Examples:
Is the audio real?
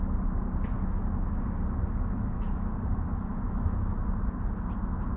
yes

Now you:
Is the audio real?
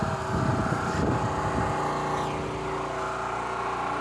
yes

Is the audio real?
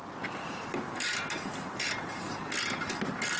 yes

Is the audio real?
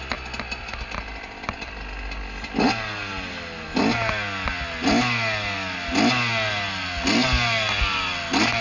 yes